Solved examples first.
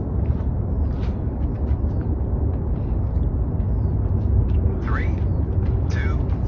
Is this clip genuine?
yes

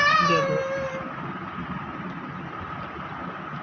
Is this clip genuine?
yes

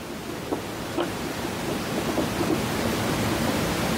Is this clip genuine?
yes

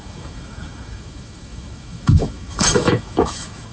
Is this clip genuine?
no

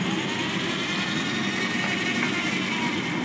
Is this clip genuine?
yes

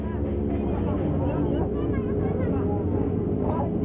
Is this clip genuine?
yes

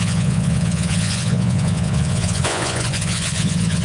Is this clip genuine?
no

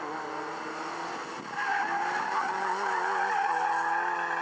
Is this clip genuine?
yes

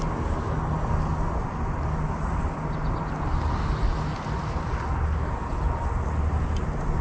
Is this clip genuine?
yes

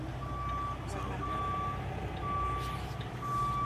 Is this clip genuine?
yes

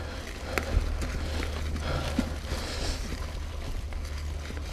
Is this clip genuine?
yes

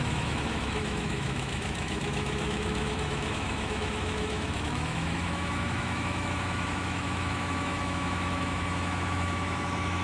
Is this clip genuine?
no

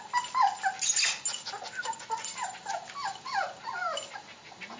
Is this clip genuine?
yes